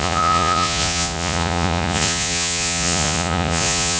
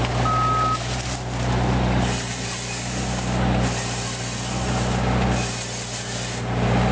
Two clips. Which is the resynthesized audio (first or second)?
first